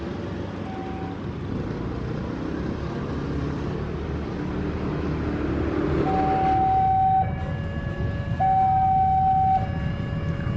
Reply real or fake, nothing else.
real